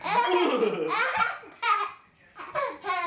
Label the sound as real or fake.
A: real